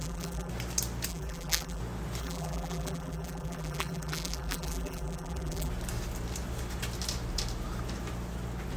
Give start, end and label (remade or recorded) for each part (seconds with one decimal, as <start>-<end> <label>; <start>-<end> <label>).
0.0-0.5 remade; 0.5-1.1 recorded; 1.1-1.8 remade; 1.8-2.2 recorded; 2.2-5.7 remade; 5.7-8.8 recorded